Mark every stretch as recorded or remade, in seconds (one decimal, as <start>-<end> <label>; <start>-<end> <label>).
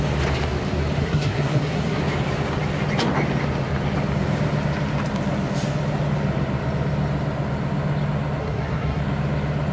0.0-1.0 recorded; 1.0-2.0 remade; 2.0-8.4 recorded; 8.4-9.0 remade; 9.0-9.7 recorded